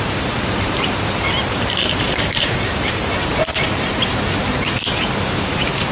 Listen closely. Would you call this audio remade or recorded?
remade